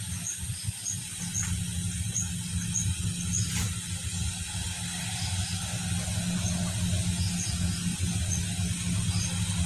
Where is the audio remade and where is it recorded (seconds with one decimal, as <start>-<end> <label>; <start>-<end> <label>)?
0.0-9.7 recorded